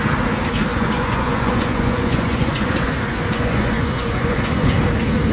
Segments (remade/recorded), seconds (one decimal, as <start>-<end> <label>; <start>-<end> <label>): 0.0-0.7 recorded; 0.7-2.9 remade; 2.9-3.3 recorded; 3.3-4.8 remade; 4.8-5.3 recorded